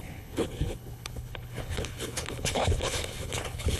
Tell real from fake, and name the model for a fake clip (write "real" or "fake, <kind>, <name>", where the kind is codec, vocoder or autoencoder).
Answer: fake, codec, HILCodec